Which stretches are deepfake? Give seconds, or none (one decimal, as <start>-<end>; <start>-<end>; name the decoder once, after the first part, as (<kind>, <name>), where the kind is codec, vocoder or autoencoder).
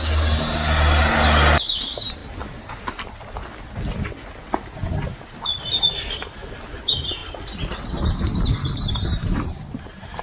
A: 7.2-10.2 (vocoder, BigVGAN v2)